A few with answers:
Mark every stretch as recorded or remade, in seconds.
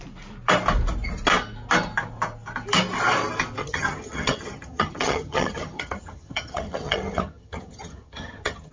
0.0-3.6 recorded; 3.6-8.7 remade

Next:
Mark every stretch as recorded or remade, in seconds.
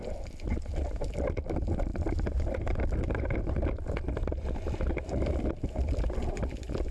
0.0-1.9 recorded; 1.9-3.4 remade; 3.4-6.9 recorded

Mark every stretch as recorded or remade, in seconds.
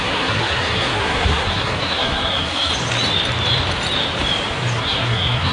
0.0-2.7 remade; 2.7-4.8 recorded; 4.8-5.5 remade